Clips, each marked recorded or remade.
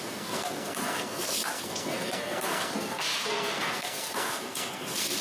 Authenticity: remade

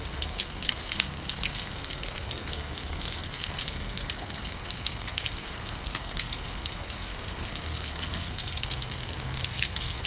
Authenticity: remade